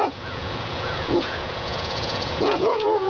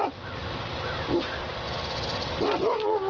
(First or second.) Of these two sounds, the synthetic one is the first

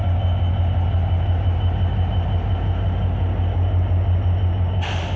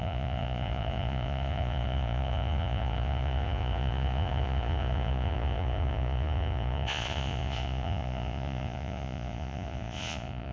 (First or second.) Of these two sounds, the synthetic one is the second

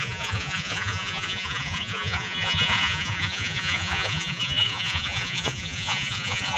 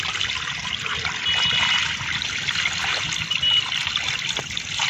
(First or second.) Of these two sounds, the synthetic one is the first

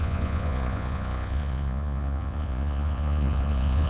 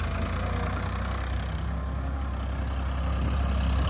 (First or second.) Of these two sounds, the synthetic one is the first